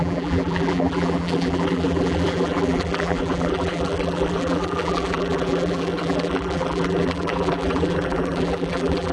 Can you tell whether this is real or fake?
fake